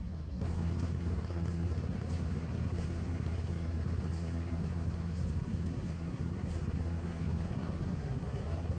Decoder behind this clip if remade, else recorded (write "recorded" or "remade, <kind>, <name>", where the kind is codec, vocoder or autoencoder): remade, codec, SNAC